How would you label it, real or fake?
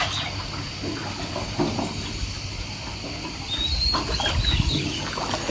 real